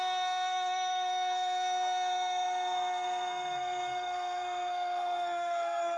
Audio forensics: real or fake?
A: fake